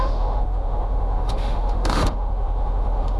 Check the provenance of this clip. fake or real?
fake